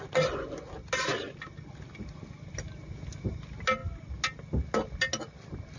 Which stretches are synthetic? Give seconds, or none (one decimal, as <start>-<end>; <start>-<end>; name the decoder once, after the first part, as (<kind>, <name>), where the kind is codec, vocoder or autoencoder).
none